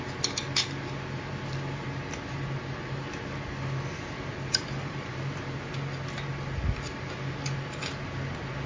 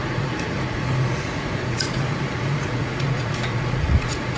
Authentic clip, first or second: first